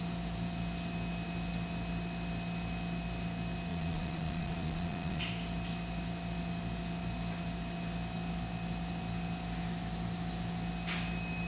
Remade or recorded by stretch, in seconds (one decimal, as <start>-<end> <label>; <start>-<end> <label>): 0.0-3.7 recorded; 3.7-5.2 remade; 5.2-11.5 recorded